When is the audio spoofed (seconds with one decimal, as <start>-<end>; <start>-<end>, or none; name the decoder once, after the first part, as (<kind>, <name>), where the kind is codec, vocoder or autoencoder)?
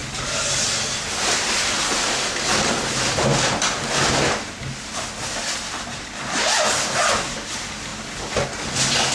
none